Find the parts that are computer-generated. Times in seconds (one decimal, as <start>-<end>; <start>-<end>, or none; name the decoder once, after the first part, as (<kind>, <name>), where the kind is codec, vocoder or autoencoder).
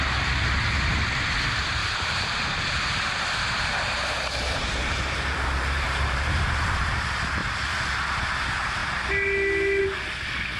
1.8-6.9 (vocoder, BigVGAN v2); 7.4-8.1